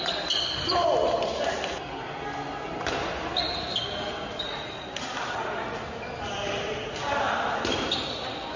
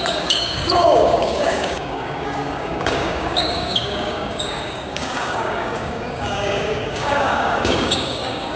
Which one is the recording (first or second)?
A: first